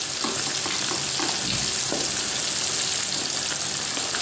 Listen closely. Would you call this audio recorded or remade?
recorded